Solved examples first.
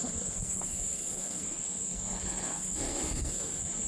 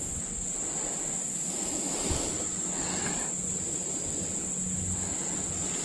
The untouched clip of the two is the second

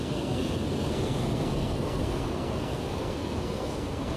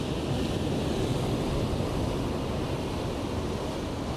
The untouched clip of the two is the second